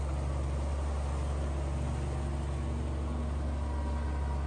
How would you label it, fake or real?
real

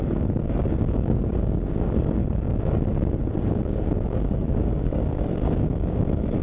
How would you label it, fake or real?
fake